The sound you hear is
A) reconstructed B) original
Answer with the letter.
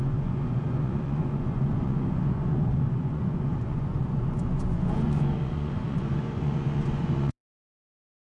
A